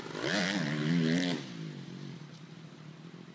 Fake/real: real